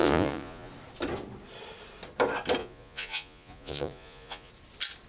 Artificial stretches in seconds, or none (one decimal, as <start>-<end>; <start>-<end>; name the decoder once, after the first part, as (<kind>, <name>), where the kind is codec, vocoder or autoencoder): 0.0-0.7 (vocoder, Vocos); 2.6-4.5